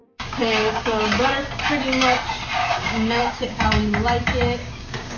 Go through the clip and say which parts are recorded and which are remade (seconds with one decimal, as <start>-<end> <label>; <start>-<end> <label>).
0.0-1.0 remade; 1.0-2.6 recorded; 2.6-3.6 remade; 3.6-4.6 recorded; 4.6-5.2 remade